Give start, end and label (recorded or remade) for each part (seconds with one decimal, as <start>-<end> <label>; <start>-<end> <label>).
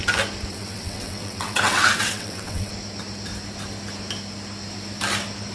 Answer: 0.0-0.5 recorded; 0.5-2.7 remade; 2.7-5.5 recorded